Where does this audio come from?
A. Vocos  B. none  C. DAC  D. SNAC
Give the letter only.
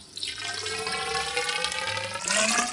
B